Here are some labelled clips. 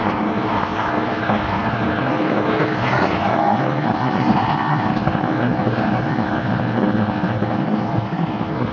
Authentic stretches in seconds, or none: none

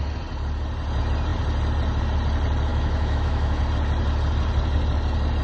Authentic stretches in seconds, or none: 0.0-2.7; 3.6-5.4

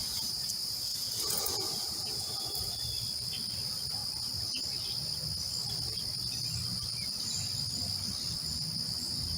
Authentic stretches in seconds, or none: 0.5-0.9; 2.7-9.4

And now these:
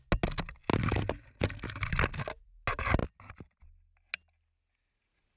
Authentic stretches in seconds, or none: 0.0-5.4

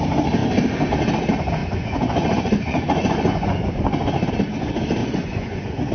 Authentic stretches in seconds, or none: 0.0-1.6; 4.3-5.0